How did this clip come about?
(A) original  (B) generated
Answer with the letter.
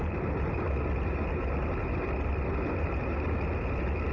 A